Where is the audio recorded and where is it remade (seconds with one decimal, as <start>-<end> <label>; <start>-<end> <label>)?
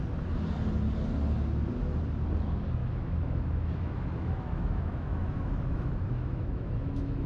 0.0-2.8 recorded; 2.8-7.3 remade